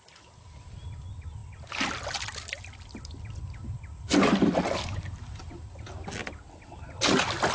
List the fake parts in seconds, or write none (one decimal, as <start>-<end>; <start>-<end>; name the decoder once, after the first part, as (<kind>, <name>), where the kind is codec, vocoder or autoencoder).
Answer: none

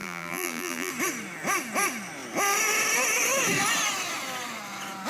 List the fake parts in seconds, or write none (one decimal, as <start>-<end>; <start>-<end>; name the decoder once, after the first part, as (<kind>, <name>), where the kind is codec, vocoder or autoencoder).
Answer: 0.0-0.9 (vocoder, BigVGAN v2)

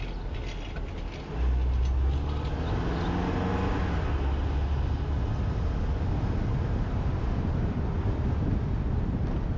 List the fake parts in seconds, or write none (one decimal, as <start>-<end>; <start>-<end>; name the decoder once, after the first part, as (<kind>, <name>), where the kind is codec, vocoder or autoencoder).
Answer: 6.5-7.8 (vocoder, BigVGAN v2)

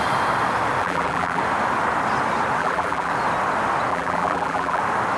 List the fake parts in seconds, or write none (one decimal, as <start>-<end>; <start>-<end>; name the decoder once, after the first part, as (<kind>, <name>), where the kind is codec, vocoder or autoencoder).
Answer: 0.8-1.4 (vocoder, BigVGAN v2); 2.6-3.1; 3.9-4.8

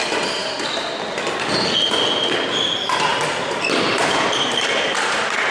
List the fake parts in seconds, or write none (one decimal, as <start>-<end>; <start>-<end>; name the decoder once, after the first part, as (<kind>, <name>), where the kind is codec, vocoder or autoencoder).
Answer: 3.1-5.5 (vocoder, BigVGAN v2)

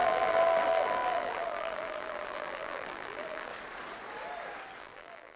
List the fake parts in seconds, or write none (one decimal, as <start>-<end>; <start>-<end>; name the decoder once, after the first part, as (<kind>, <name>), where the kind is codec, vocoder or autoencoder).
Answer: 0.0-3.5 (vocoder, BigVGAN v2); 4.8-5.4

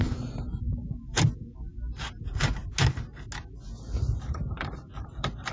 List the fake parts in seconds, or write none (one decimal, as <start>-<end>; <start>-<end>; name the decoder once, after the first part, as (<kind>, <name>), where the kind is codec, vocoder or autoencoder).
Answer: 0.0-2.6 (vocoder, BigVGAN v2); 4.0-5.5